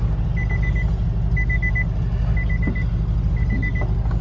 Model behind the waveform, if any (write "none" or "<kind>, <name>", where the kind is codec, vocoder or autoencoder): none